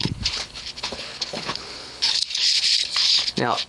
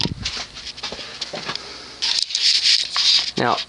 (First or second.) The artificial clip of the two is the first